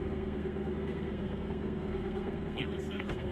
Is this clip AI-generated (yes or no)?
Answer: yes